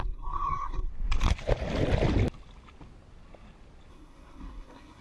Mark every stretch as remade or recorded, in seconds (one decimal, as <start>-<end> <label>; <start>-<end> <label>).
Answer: 0.0-0.9 remade; 0.9-3.9 recorded; 3.9-5.0 remade